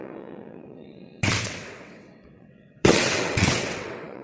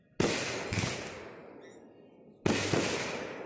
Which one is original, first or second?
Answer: second